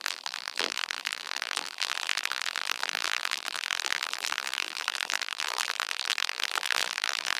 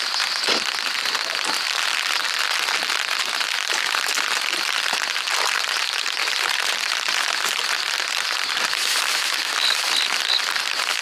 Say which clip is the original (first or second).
second